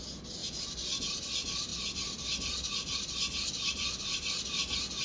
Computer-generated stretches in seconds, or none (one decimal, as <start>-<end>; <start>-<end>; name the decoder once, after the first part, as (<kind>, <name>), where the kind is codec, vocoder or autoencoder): none